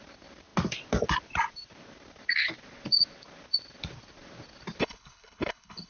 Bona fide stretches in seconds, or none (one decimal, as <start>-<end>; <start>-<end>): 0.0-4.8